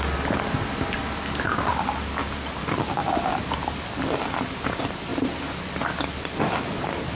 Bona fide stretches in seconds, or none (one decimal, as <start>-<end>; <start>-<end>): 0.0-7.1